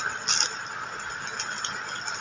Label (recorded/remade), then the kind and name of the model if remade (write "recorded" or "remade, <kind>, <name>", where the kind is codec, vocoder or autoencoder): recorded